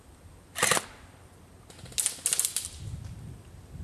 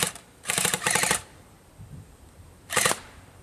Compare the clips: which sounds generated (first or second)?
second